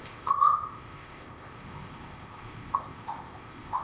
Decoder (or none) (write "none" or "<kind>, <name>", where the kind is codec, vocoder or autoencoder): codec, ZipCodec